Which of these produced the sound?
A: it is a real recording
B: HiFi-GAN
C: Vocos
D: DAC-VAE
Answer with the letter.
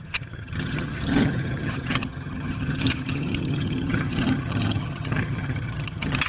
B